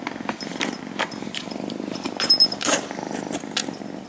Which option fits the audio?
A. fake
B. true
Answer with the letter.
A